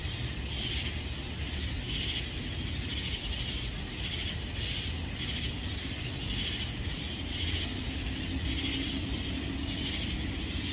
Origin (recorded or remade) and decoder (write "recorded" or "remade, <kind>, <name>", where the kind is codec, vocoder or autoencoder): recorded